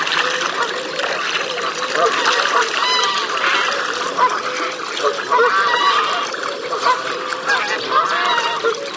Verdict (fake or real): real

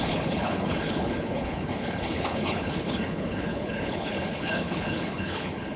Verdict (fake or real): fake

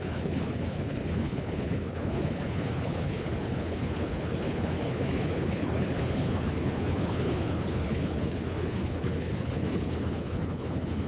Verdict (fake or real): fake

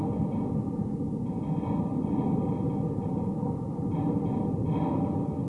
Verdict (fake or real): real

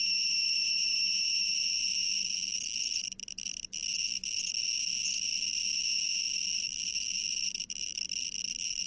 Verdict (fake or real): real